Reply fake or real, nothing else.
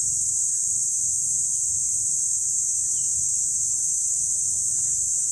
real